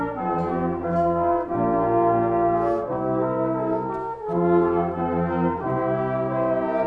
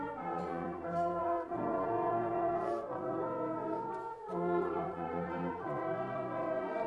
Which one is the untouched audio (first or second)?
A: first